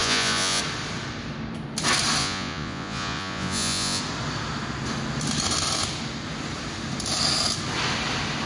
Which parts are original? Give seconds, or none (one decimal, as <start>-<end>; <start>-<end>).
0.6-2.2; 4.0-8.5